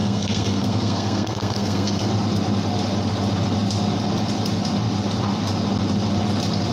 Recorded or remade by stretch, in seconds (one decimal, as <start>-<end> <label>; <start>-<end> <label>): 0.0-2.1 remade; 2.1-6.7 recorded